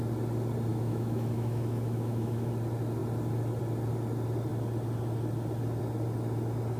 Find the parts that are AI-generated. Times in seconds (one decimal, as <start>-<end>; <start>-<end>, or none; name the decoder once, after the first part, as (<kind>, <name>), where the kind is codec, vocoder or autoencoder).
0.7-2.5 (autoencoder, DAC-VAE)